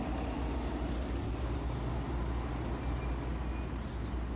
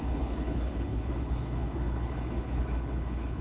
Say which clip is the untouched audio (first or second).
first